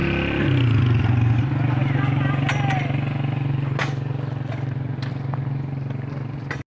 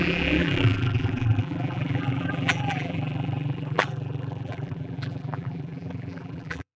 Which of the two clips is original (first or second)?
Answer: first